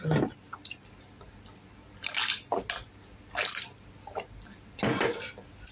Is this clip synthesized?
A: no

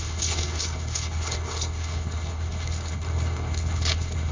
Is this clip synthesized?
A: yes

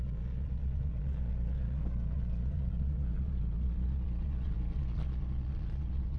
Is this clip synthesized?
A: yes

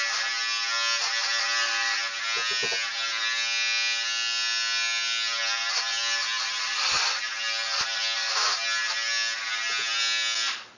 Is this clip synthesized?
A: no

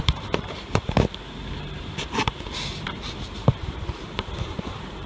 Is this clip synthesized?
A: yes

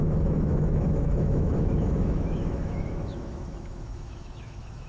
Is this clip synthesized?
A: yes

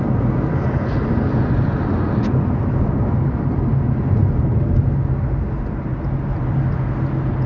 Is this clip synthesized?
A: no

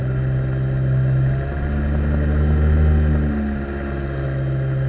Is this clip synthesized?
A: no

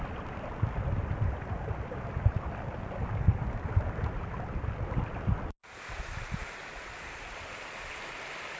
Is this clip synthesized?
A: no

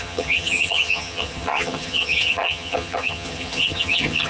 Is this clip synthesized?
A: yes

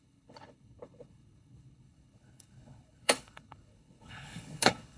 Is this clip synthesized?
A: yes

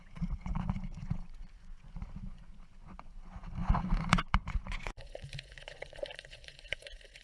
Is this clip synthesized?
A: yes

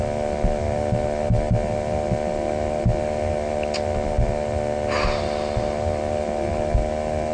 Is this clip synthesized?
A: no